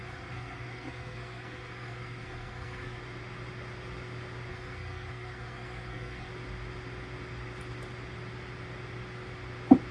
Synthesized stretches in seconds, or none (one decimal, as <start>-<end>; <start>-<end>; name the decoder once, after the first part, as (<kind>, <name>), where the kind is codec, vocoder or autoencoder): 0.0-3.0 (codec, SNAC); 4.5-6.3